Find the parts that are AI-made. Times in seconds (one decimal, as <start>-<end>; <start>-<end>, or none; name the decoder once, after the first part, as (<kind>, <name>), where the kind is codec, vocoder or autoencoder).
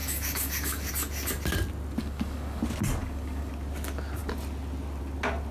0.0-0.9 (codec, DAC); 2.0-2.6; 3.0-3.5